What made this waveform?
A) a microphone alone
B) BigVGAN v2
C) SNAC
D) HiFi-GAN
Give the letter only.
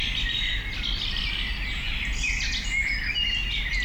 A